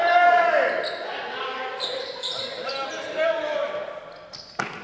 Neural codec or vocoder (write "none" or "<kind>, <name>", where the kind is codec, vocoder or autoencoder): none